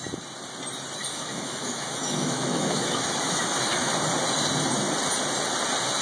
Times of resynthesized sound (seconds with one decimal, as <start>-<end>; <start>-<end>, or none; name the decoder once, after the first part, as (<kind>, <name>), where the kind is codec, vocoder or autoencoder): 1.1-3.9 (autoencoder, DAC-VAE)

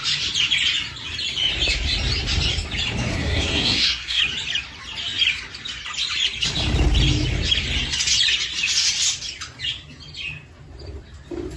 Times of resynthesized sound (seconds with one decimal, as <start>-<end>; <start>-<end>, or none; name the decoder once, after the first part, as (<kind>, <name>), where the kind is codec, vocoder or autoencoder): 3.1-4.2 (codec, SNAC)